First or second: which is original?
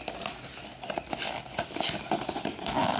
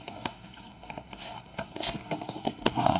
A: first